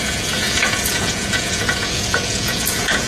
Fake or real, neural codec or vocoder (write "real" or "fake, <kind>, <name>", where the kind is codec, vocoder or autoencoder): fake, vocoder, Vocos